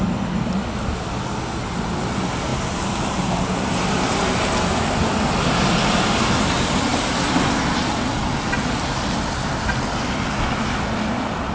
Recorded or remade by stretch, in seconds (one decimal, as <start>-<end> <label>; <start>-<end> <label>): 0.0-11.5 recorded